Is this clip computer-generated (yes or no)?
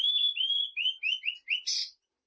no